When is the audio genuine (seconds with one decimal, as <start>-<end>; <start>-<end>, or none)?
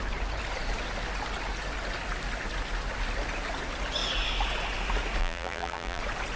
0.0-5.2; 6.0-6.4